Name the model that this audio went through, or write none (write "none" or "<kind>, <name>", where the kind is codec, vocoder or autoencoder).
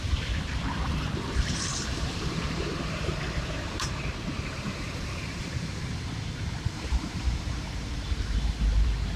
vocoder, BigVGAN v2